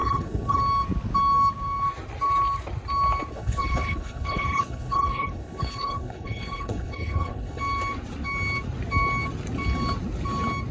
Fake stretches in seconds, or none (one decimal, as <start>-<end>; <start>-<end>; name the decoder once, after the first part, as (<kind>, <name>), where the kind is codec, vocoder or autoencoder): 0.0-0.6 (codec, HILCodec); 3.3-7.6